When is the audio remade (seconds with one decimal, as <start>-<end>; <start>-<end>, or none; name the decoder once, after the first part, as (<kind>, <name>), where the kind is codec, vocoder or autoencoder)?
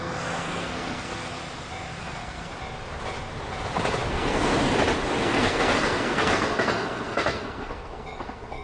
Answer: 0.0-1.4 (codec, SNAC); 2.0-2.5; 4.1-4.5; 5.2-8.6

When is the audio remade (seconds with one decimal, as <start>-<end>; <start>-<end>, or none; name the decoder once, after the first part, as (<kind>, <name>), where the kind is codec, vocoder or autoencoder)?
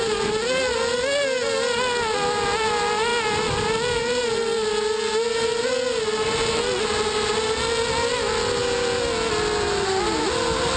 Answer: none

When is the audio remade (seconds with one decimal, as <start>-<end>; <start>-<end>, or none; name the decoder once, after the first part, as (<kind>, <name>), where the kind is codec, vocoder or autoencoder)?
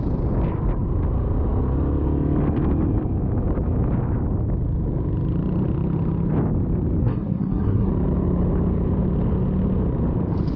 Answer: 7.0-7.9 (codec, SNAC)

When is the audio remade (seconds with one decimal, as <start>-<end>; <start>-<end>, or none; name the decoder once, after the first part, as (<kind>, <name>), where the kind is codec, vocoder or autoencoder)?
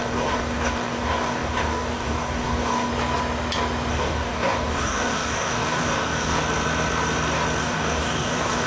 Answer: 0.0-2.9 (codec, DAC); 3.9-6.4; 7.6-8.7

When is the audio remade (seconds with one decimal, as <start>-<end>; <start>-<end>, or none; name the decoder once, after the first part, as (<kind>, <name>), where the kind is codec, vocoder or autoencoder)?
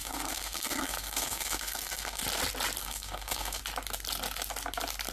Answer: 0.0-2.2 (codec, SNAC); 2.8-3.6